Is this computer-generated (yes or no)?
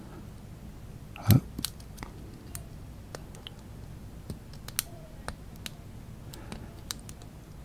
no